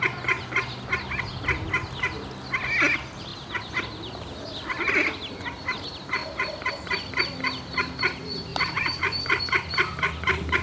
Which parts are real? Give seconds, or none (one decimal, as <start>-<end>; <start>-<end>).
0.0-8.5; 9.4-10.6

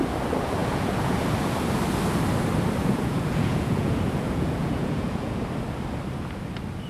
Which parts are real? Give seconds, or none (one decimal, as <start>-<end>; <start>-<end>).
0.0-0.6; 1.2-2.8; 5.4-6.9

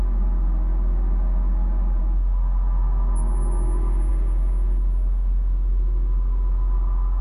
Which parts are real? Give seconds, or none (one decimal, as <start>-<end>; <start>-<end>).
0.0-7.2

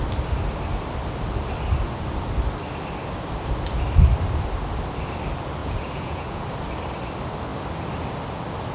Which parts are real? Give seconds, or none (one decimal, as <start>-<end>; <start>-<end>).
0.0-5.6; 6.4-8.7

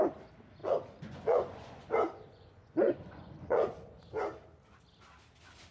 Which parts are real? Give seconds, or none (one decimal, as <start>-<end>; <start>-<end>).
0.0-0.6; 4.0-5.7